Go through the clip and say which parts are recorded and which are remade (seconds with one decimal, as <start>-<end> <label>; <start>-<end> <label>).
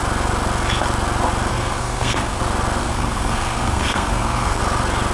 0.0-1.5 recorded; 1.5-2.4 remade; 2.4-2.8 recorded; 2.8-4.6 remade; 4.6-5.1 recorded